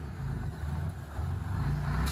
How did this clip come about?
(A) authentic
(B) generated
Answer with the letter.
A